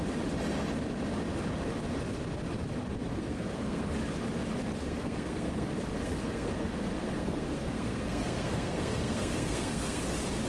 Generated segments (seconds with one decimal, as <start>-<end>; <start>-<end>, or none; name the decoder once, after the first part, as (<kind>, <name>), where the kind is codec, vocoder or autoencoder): 3.1-3.9 (codec, SNAC); 4.8-10.0